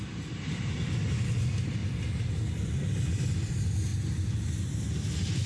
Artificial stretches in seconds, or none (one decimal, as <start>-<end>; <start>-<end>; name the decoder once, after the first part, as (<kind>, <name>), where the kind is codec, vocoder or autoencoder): 0.0-1.8 (vocoder, BigVGAN v2); 2.6-3.9; 4.9-5.5